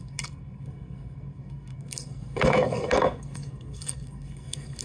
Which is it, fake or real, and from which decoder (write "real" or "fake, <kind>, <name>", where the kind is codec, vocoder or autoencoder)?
fake, codec, SNAC